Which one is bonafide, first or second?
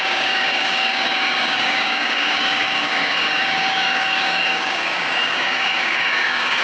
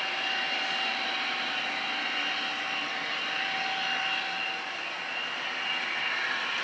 second